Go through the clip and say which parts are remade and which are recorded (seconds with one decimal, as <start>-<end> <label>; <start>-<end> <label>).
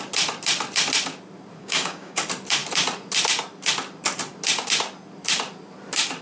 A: 0.0-1.6 recorded; 1.6-2.2 remade; 2.2-6.2 recorded